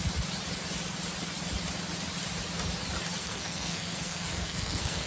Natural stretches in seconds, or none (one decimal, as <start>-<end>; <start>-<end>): 0.0-3.2